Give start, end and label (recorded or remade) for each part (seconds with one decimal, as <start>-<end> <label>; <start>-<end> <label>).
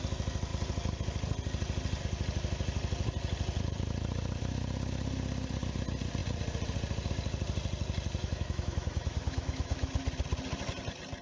0.0-8.2 recorded; 8.2-10.0 remade; 10.0-11.2 recorded